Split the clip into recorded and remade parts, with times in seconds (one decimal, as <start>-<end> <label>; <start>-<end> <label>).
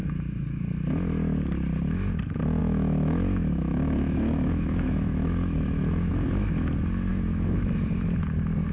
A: 0.0-2.6 recorded; 2.6-6.1 remade; 6.1-7.1 recorded; 7.1-7.7 remade; 7.7-8.7 recorded